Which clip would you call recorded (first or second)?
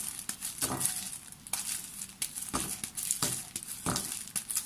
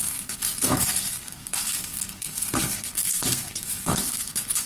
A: first